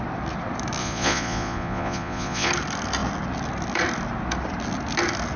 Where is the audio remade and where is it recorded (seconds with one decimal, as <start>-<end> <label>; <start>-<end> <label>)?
0.0-0.8 recorded; 0.8-2.5 remade; 2.5-5.4 recorded

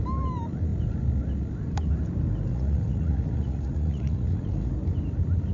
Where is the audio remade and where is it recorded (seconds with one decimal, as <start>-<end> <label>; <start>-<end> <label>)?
0.0-2.5 recorded; 2.5-4.7 remade; 4.7-5.5 recorded

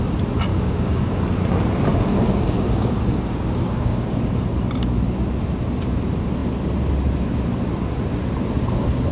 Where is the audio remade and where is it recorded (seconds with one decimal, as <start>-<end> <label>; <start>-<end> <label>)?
0.0-0.5 recorded; 0.5-1.1 remade; 1.1-1.9 recorded; 1.9-4.4 remade; 4.4-9.1 recorded

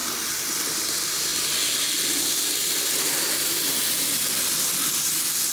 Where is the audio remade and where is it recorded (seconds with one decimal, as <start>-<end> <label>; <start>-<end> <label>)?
0.0-5.5 recorded

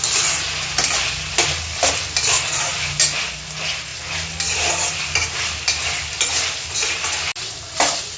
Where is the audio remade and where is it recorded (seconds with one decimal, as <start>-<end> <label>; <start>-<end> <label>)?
0.0-8.2 recorded

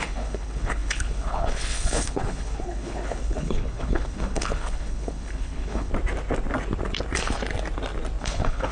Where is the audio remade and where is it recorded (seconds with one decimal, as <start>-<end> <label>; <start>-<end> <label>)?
0.0-5.9 remade; 5.9-8.2 recorded; 8.2-8.7 remade

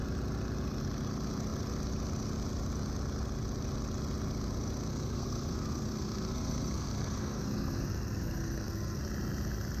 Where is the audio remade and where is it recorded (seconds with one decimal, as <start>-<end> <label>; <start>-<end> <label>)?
0.0-4.9 recorded; 4.9-9.0 remade; 9.0-9.8 recorded

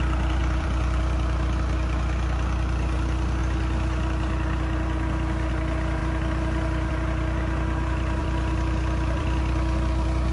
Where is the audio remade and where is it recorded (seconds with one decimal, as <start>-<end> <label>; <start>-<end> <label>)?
0.0-0.4 recorded; 0.4-1.0 remade; 1.0-8.2 recorded; 8.2-9.4 remade; 9.4-10.3 recorded